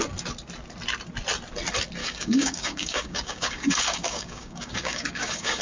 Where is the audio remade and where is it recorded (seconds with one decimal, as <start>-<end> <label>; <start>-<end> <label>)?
0.0-2.0 recorded; 2.0-5.6 remade